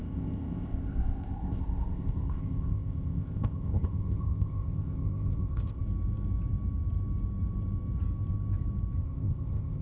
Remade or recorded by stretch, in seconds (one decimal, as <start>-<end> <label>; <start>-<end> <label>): 0.0-5.8 remade; 5.8-9.0 recorded; 9.0-9.8 remade